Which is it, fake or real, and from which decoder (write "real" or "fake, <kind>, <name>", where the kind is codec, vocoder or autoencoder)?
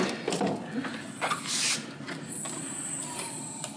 real